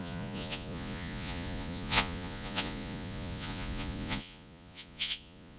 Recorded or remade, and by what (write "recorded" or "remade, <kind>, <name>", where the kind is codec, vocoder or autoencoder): remade, vocoder, Vocos